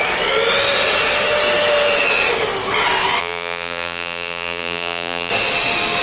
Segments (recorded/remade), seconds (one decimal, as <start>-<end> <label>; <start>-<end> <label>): 0.0-3.2 recorded; 3.2-5.3 remade; 5.3-6.0 recorded